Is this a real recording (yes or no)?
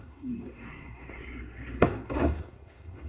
no